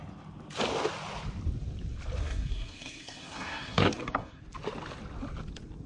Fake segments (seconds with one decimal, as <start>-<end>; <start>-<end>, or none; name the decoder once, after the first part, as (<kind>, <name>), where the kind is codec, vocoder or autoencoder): 2.2-4.4 (codec, SNAC)